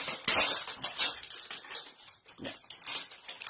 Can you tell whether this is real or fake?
fake